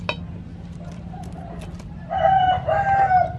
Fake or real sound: real